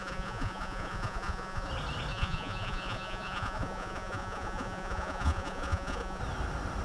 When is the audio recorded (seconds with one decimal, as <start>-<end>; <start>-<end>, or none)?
1.7-2.1; 6.2-6.8